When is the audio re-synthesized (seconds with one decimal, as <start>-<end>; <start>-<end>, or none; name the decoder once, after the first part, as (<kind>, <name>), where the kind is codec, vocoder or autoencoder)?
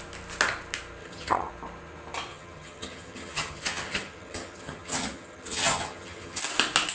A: 1.0-1.5 (vocoder, HiFi-GAN); 2.3-6.4